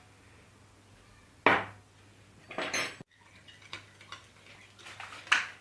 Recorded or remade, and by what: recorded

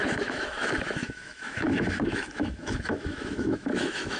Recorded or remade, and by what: remade, autoencoder, DAC-VAE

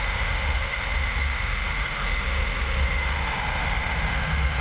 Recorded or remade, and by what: remade, autoencoder, DAC-VAE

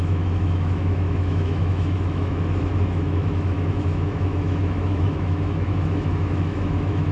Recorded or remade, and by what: remade, autoencoder, DAC-VAE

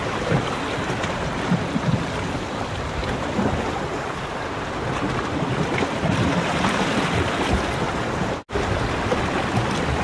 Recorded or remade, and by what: recorded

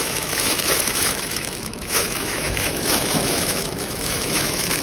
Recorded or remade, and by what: remade, autoencoder, DAC-VAE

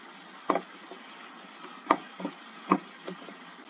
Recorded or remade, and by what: recorded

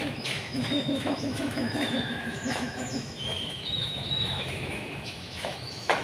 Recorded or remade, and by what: remade, autoencoder, DAC-VAE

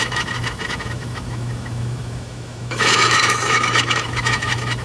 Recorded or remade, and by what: remade, autoencoder, DAC-VAE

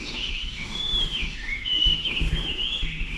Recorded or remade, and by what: remade, autoencoder, DAC-VAE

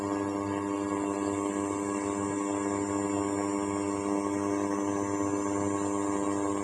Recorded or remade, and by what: recorded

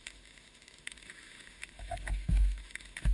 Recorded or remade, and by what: remade, autoencoder, DAC-VAE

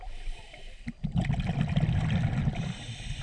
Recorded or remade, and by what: recorded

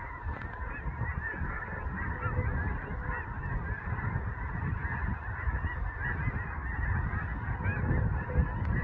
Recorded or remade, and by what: recorded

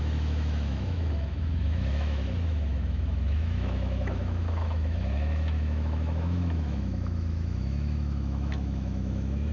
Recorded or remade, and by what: remade, autoencoder, DAC-VAE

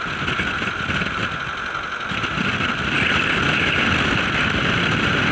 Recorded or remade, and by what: recorded